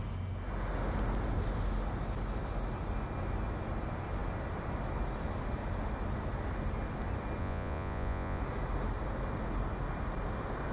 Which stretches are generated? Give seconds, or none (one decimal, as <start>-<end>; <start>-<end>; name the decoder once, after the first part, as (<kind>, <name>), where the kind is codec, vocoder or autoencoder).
7.4-8.4 (vocoder, Vocos)